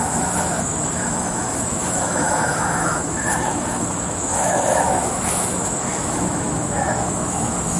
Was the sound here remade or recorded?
remade